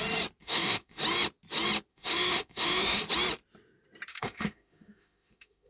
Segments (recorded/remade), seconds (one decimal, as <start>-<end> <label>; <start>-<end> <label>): 0.0-0.4 recorded; 0.4-1.0 remade; 1.0-1.9 recorded; 1.9-3.0 remade; 3.0-4.1 recorded; 4.1-5.7 remade